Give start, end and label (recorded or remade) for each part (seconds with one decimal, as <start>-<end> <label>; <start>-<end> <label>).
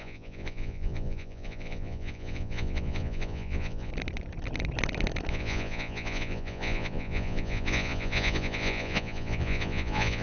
0.0-3.9 remade; 3.9-5.3 recorded; 5.3-10.2 remade